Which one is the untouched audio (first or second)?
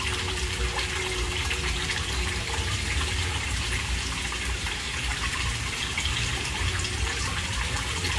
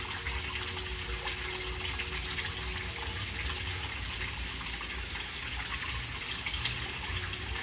second